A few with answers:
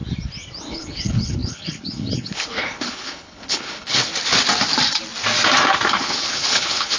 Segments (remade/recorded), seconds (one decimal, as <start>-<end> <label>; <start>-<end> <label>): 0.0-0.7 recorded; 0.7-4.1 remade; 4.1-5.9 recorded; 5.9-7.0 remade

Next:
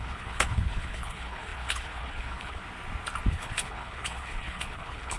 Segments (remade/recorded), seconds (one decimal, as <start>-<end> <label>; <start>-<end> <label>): 0.0-2.6 remade; 2.6-3.3 recorded; 3.3-5.2 remade

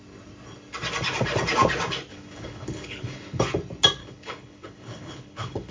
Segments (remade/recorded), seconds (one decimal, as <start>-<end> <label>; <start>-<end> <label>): 0.0-2.1 recorded; 2.1-3.4 remade; 3.4-4.0 recorded; 4.0-5.7 remade

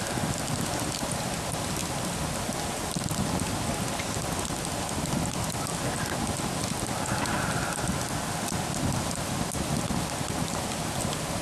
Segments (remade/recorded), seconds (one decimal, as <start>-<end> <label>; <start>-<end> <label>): 0.0-11.4 recorded

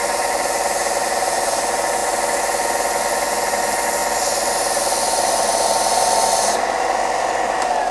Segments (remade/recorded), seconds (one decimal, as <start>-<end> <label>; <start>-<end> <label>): 0.0-7.9 recorded